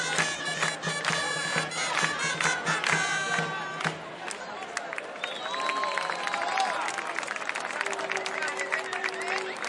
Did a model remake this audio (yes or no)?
no